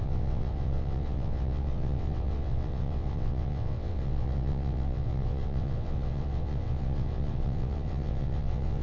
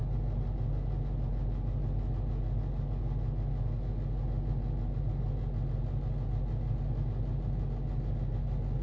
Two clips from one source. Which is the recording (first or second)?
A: second